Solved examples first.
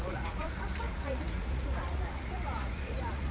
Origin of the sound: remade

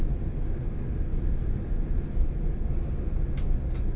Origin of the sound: recorded